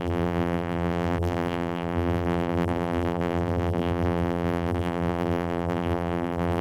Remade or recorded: remade